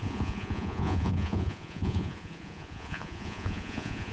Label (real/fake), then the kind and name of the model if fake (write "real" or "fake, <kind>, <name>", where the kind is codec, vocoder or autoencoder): fake, vocoder, Vocos